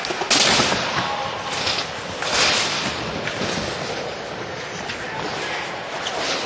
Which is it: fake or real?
real